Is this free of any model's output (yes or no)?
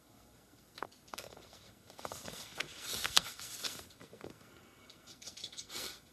no